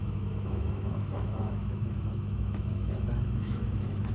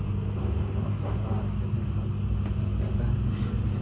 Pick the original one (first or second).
second